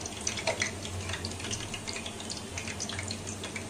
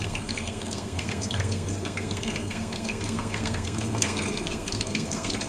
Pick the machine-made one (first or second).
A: second